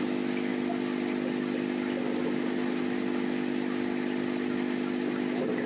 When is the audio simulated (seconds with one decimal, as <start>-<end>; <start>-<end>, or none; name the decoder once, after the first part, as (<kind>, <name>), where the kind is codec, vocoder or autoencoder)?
none